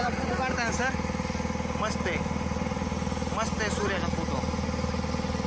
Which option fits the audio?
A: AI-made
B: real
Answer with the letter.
B